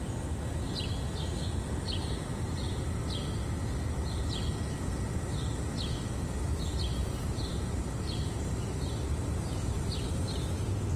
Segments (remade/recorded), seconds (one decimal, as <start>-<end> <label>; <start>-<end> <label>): 0.0-7.0 recorded; 7.0-10.1 remade; 10.1-11.0 recorded